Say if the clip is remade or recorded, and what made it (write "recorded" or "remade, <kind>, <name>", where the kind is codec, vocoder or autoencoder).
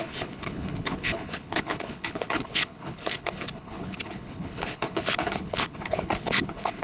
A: remade, codec, HILCodec